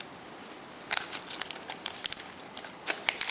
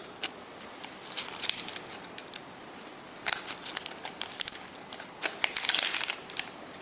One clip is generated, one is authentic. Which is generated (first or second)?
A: first